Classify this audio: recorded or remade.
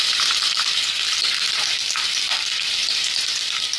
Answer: recorded